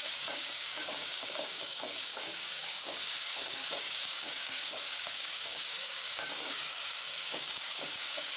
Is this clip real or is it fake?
fake